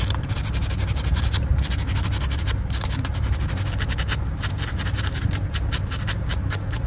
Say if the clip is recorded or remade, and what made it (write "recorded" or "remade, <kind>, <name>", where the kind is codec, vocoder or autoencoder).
recorded